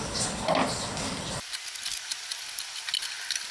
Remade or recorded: recorded